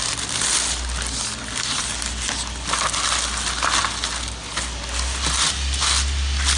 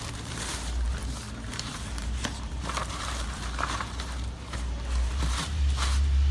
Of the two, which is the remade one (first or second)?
second